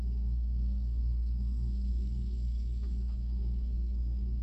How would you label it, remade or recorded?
remade